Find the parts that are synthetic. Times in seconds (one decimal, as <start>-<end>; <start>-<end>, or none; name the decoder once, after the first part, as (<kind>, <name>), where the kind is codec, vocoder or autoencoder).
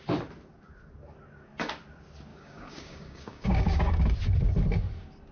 2.3-4.0 (codec, DAC)